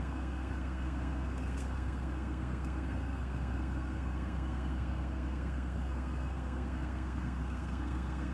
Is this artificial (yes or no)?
yes